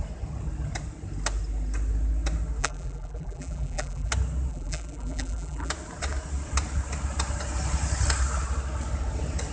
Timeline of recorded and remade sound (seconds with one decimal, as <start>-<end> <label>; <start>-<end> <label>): 0.0-2.6 recorded; 2.6-4.1 remade; 4.1-4.5 recorded; 4.5-5.7 remade; 5.7-9.5 recorded